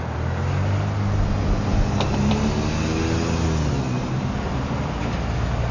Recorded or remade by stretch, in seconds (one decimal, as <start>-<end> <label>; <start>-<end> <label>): 0.0-5.7 recorded